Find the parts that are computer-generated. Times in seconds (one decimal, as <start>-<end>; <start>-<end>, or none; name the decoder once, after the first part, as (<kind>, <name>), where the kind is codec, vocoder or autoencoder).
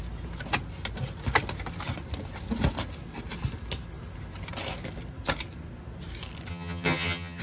6.5-7.4 (vocoder, HiFi-GAN)